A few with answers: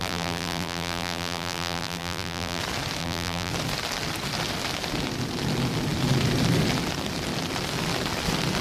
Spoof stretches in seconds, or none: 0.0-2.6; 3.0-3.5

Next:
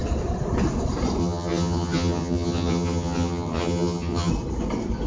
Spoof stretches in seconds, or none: 1.2-4.3

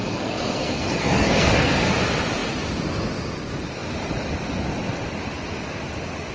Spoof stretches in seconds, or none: 0.0-1.9

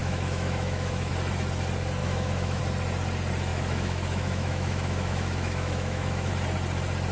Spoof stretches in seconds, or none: 0.0-1.1; 2.0-2.6; 3.5-6.3

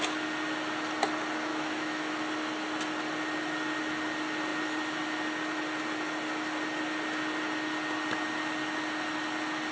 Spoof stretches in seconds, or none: 1.5-2.1

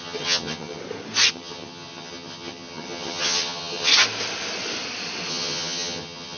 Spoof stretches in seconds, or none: 0.0-0.8; 1.3-3.9; 5.3-6.4